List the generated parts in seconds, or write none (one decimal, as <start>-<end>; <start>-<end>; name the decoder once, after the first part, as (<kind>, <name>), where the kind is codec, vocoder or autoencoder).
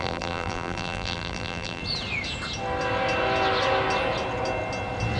0.0-1.8 (vocoder, BigVGAN v2)